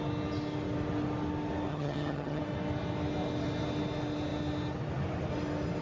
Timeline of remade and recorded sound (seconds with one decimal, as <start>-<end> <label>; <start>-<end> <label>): 0.0-1.7 recorded; 1.7-2.4 remade; 2.4-5.8 recorded